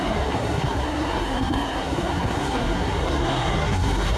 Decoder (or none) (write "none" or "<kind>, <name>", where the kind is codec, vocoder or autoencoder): codec, SNAC